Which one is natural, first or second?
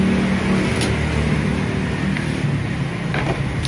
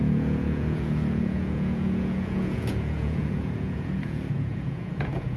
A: first